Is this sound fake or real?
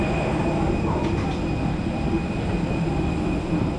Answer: real